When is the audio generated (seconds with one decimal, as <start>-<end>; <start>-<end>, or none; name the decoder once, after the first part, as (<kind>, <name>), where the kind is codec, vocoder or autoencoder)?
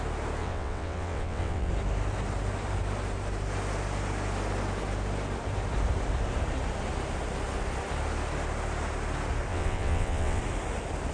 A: 0.4-1.7 (vocoder, WaveNeXt); 9.5-10.4